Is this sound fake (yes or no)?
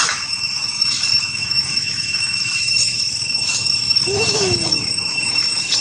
yes